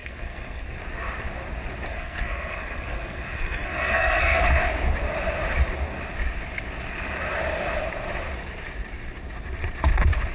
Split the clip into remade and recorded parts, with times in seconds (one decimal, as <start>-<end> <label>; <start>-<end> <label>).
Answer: 0.0-0.8 remade; 0.8-1.9 recorded; 1.9-4.4 remade; 4.4-10.3 recorded